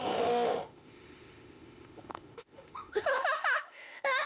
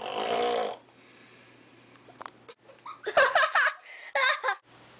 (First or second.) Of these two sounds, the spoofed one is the first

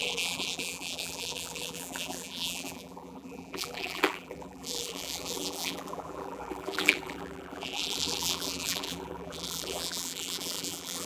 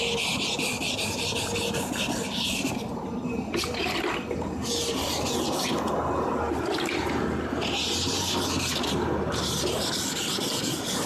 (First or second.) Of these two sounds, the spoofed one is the first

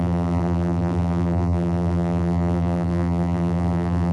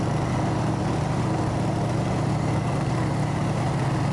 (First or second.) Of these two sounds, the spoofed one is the first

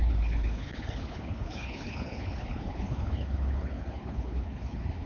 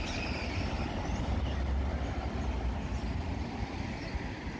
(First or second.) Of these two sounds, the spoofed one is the first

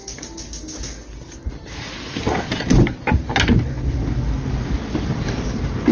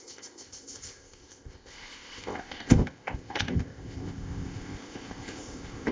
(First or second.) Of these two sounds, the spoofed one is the second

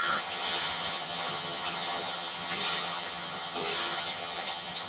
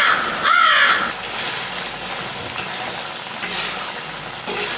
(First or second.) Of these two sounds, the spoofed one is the first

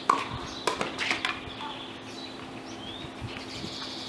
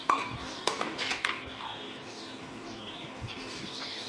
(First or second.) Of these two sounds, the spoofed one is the second